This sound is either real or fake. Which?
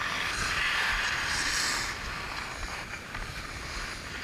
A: real